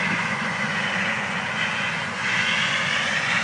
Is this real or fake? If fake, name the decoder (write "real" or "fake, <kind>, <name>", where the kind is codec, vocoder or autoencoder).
fake, vocoder, Vocos